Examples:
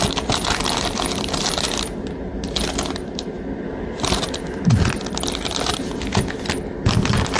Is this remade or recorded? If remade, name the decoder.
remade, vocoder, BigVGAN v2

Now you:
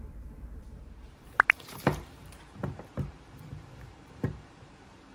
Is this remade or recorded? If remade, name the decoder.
remade, vocoder, BigVGAN v2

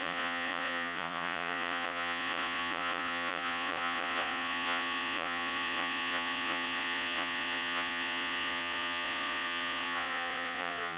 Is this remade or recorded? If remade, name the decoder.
remade, vocoder, Vocos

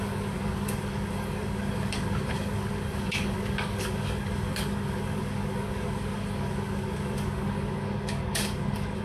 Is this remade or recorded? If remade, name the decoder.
remade, codec, DAC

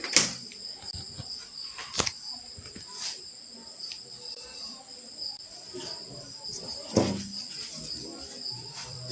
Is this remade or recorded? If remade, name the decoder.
recorded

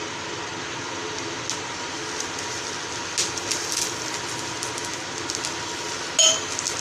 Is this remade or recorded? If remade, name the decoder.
recorded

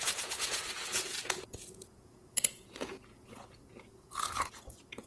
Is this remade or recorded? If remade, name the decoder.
remade, vocoder, Vocos